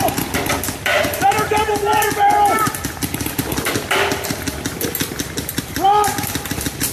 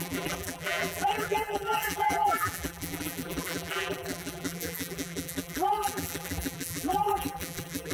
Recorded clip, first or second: first